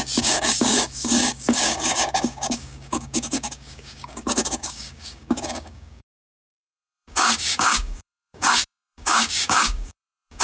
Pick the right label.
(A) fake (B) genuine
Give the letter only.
A